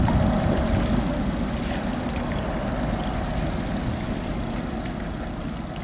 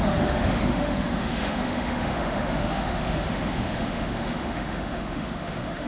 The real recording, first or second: first